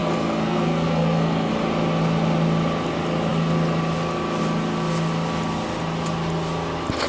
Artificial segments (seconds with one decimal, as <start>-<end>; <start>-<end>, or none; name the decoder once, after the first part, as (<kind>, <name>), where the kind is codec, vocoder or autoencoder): 0.0-1.5 (codec, SNAC)